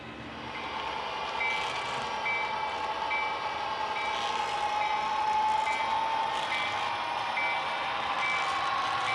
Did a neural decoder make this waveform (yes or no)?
no